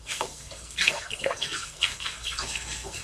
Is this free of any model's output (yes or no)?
no